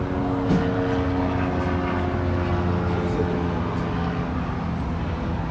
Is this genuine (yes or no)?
yes